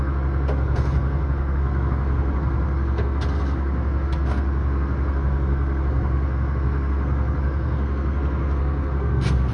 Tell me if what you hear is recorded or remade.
remade